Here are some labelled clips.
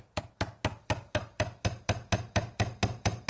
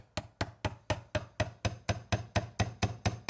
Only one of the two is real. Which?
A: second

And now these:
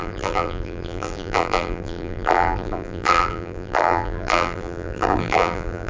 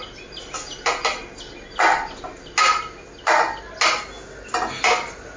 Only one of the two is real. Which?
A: second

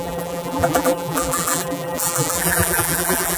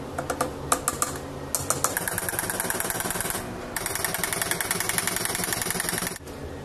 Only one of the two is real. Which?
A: second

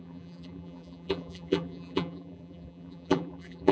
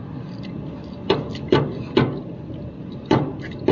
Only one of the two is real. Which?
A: second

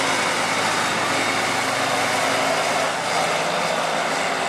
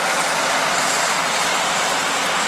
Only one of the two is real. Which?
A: first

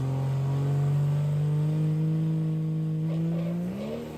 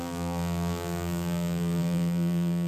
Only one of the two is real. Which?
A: first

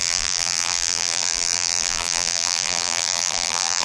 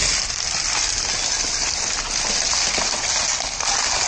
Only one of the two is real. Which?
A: second